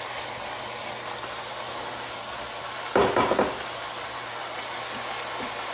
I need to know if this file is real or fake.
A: real